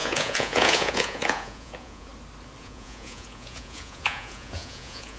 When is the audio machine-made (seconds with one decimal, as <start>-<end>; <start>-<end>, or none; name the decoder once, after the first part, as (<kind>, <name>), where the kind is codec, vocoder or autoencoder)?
0.0-2.1 (vocoder, Vocos); 2.6-5.2